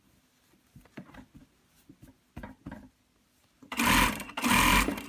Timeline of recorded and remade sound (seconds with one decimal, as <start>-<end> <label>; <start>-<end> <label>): 0.0-5.1 recorded